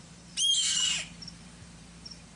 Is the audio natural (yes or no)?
no